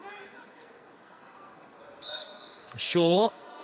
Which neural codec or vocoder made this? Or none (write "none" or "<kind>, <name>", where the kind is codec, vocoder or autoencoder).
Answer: codec, SNAC